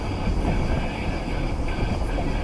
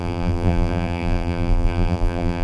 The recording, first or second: first